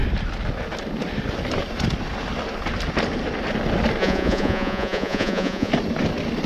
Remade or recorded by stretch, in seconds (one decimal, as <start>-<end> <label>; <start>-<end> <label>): 0.0-4.0 recorded; 4.0-5.7 remade; 5.7-6.5 recorded